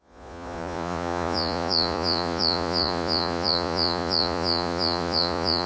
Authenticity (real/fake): fake